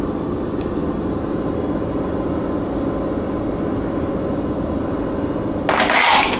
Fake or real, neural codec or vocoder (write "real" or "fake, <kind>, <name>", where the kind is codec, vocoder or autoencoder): real